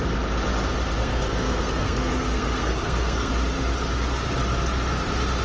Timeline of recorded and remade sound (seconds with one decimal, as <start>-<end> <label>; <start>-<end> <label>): 0.0-1.0 recorded; 1.0-3.3 remade; 3.3-5.4 recorded